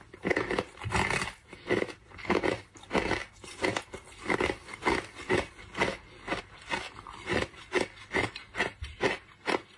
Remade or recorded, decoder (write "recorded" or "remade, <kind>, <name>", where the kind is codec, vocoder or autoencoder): recorded